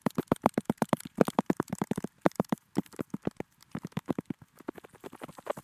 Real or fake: fake